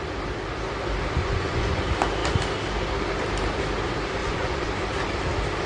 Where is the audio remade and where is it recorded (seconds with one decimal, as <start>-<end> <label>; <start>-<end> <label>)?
0.0-1.2 recorded; 1.2-1.8 remade; 1.8-4.2 recorded; 4.2-4.7 remade; 4.7-5.7 recorded

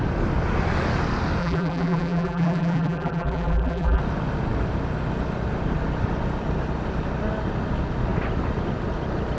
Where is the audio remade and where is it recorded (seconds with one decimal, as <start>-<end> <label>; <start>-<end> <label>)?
0.0-1.4 recorded; 1.4-4.0 remade; 4.0-9.4 recorded

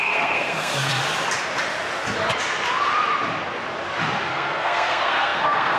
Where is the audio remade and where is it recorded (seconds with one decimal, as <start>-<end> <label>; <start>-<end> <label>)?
0.0-0.9 remade; 0.9-4.3 recorded; 4.3-5.8 remade

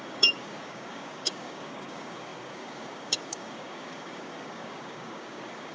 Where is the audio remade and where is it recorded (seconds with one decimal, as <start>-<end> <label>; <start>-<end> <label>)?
0.0-5.7 remade